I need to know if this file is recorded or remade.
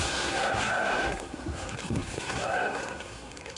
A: remade